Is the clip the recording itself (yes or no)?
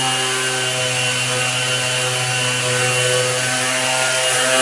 yes